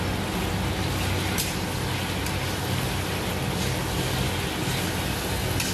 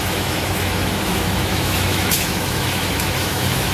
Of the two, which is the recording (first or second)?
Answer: first